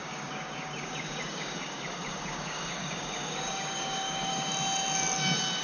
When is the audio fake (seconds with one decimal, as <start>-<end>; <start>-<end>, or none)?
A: 0.0-4.5